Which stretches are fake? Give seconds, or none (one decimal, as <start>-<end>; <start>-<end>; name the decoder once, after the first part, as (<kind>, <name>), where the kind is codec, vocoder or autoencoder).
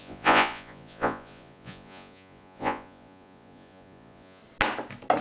0.0-4.4 (vocoder, Vocos)